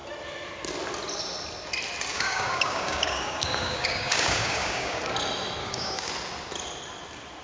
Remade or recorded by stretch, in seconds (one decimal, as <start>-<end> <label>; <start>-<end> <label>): 0.0-2.1 recorded; 2.1-5.0 remade; 5.0-5.6 recorded; 5.6-6.1 remade; 6.1-7.4 recorded